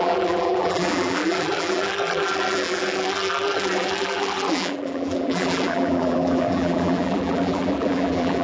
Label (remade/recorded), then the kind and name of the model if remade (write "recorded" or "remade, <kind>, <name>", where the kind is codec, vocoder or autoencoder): remade, vocoder, BigVGAN v2